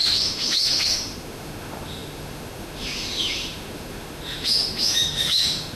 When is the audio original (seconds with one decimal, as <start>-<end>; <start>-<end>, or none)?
none

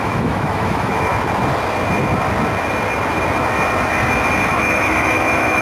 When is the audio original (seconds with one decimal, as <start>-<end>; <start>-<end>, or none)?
1.1-4.5

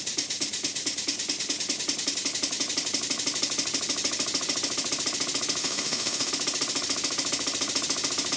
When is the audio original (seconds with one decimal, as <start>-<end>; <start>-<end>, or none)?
0.0-5.6; 6.3-8.4

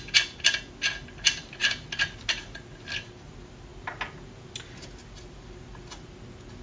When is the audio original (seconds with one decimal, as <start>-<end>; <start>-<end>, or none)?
0.0-6.6

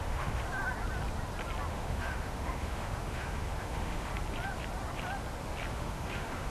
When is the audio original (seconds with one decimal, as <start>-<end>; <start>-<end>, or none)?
0.4-1.7; 4.1-5.7